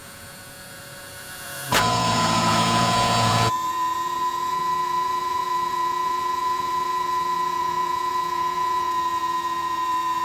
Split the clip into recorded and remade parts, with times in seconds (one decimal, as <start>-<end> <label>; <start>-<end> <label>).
0.0-10.2 remade